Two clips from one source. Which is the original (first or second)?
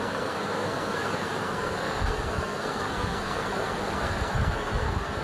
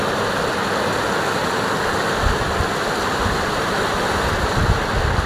second